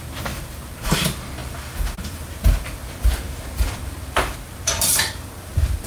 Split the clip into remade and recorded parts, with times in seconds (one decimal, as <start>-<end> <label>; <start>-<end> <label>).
0.0-5.9 remade